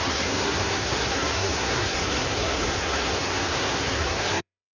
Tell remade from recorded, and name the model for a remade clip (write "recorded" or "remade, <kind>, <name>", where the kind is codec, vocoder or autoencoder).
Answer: remade, codec, SNAC